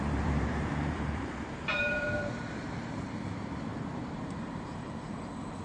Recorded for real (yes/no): no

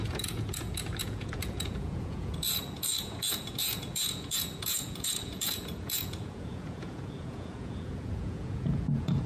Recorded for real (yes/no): no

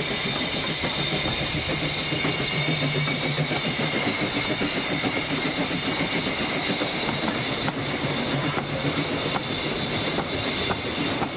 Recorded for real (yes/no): no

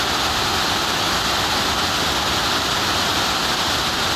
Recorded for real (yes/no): yes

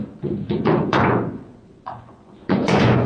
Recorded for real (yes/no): no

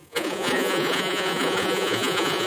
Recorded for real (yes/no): no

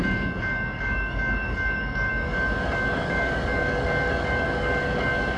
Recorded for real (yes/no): no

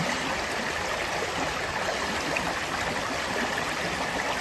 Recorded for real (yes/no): yes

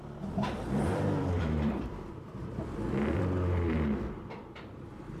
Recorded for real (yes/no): no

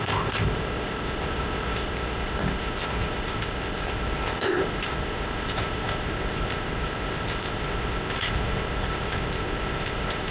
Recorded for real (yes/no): no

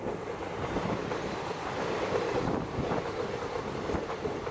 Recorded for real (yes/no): yes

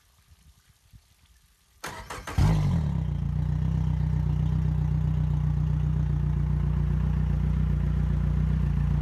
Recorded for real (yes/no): yes